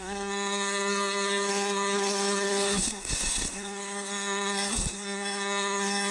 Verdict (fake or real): fake